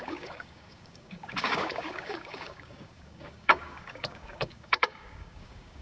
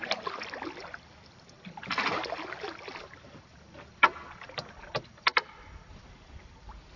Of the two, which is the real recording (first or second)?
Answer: second